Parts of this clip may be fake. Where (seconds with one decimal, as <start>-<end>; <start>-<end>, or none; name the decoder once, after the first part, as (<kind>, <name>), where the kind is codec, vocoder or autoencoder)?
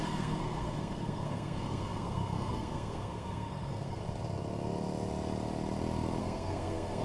0.0-4.0 (codec, SNAC); 6.2-7.0